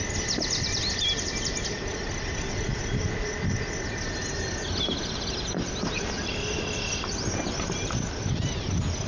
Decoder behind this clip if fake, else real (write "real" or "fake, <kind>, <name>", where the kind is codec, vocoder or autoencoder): real